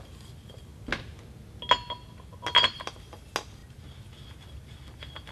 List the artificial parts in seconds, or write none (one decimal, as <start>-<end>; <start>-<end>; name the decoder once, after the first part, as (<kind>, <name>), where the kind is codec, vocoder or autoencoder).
none